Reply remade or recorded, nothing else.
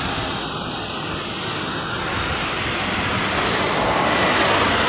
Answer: recorded